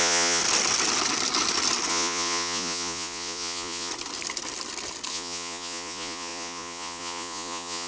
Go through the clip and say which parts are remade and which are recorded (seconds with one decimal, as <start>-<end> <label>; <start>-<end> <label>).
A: 0.0-0.4 remade; 0.4-1.9 recorded; 1.9-3.9 remade; 3.9-5.1 recorded; 5.1-7.9 remade